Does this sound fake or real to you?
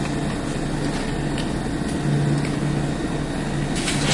real